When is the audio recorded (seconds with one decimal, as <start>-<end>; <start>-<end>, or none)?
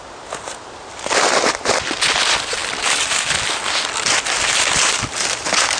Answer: 0.0-5.8